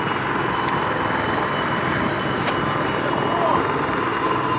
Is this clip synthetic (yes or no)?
no